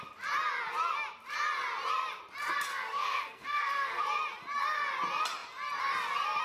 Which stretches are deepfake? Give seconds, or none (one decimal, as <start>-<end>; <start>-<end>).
2.7-4.0